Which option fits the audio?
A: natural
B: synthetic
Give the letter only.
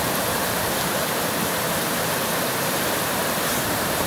B